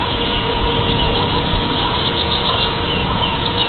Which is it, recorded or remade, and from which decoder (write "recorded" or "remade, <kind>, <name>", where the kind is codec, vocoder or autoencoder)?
remade, vocoder, Vocos